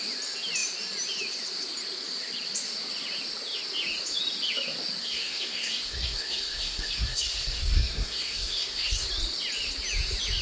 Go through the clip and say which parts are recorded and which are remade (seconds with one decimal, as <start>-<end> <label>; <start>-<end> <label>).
0.0-5.0 recorded; 5.0-9.1 remade; 9.1-10.4 recorded